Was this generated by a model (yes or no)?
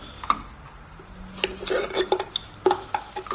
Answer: no